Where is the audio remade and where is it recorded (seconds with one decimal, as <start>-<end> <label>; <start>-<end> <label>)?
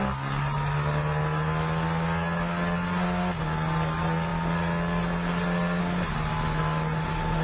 0.0-7.4 recorded